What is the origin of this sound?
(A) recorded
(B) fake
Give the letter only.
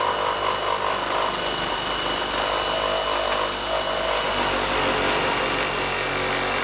A